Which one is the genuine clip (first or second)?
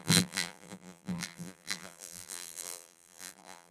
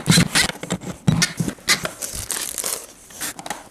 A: second